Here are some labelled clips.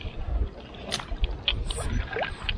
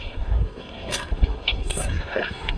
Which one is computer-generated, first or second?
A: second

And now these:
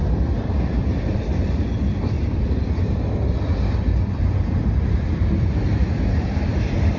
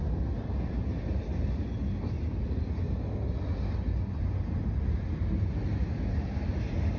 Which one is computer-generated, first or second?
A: first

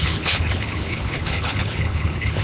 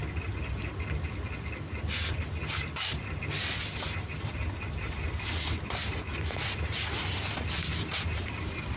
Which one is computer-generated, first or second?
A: first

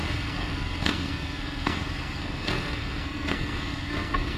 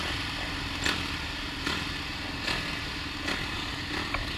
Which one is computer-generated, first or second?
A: first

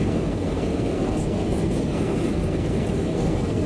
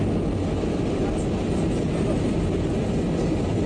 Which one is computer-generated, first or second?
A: first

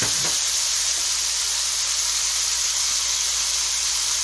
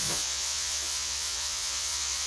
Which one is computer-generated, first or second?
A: second